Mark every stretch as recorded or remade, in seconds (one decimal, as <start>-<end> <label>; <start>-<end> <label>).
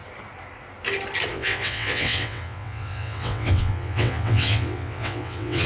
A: 0.0-1.3 recorded; 1.3-5.7 remade